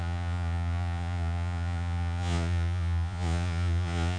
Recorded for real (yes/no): no